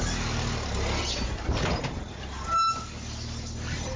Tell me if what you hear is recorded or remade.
recorded